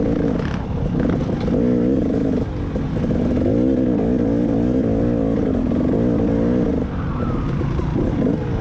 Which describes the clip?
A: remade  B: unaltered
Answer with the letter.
B